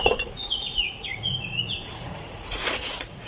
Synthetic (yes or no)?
yes